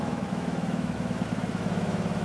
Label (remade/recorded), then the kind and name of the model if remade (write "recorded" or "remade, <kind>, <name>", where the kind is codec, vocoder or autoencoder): remade, autoencoder, DAC-VAE